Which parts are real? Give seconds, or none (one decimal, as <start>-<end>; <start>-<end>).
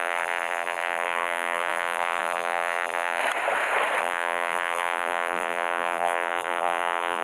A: 3.2-4.0